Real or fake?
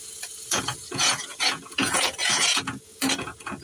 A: fake